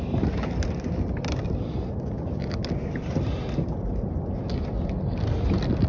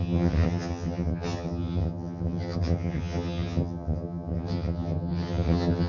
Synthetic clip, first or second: second